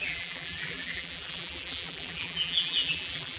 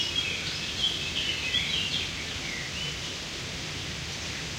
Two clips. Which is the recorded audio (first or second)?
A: second